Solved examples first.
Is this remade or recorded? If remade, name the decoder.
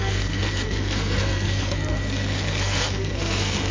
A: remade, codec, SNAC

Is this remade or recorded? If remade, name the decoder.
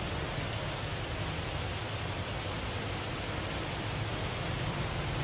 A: recorded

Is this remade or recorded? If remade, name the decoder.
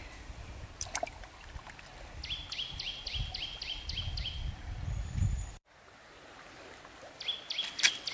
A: recorded